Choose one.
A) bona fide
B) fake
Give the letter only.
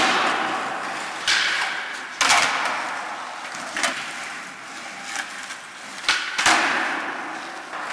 A